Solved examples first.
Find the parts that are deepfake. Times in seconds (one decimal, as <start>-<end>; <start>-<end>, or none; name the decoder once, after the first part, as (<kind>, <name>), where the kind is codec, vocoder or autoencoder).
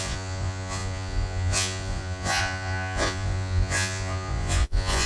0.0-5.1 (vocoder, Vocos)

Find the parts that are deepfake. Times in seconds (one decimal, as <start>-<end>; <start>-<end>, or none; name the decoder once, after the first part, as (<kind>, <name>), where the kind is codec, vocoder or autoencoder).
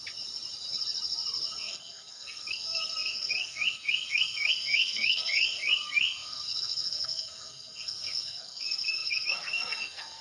1.6-10.2 (codec, SNAC)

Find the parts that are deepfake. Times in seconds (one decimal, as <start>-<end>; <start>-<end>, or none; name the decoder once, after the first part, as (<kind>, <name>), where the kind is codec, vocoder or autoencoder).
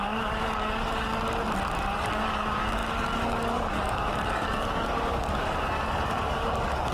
0.0-1.1 (codec, DAC); 2.0-6.9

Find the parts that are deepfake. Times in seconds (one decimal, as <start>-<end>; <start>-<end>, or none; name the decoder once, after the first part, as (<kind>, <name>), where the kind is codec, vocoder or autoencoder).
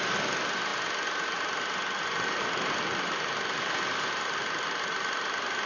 none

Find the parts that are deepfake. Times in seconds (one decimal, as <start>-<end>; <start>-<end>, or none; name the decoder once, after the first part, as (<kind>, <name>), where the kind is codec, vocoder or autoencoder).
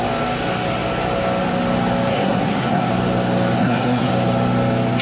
2.1-2.9 (codec, SNAC); 3.6-4.1